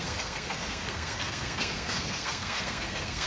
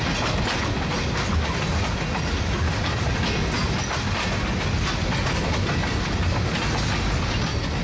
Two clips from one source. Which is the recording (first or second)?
second